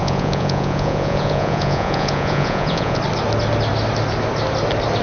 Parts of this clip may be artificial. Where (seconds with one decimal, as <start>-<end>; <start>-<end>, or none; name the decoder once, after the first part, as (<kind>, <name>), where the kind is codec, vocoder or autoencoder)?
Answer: 0.0-3.0 (vocoder, Vocos)